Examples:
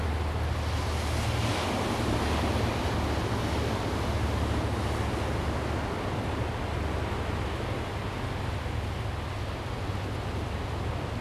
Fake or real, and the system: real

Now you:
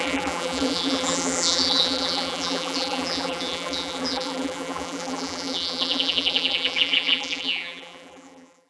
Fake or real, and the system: fake, vocoder, BigVGAN v2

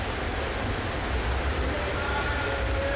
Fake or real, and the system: real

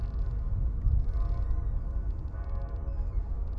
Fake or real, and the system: real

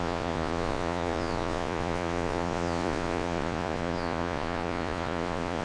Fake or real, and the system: fake, vocoder, Vocos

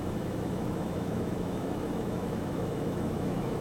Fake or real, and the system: fake, autoencoder, DAC-VAE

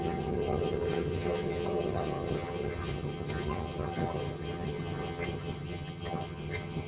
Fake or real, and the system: fake, vocoder, HiFi-GAN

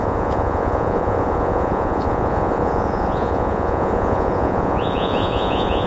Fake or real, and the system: fake, vocoder, Vocos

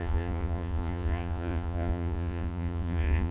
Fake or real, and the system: fake, vocoder, Vocos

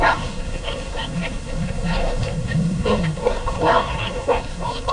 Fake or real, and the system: fake, codec, SNAC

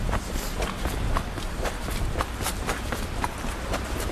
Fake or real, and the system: real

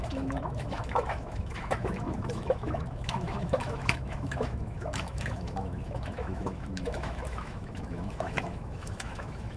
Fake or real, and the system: fake, autoencoder, DAC-VAE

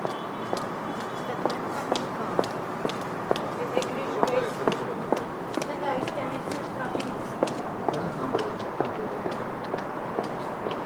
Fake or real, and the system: real